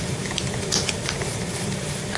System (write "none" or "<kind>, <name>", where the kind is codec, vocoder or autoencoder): vocoder, BigVGAN v2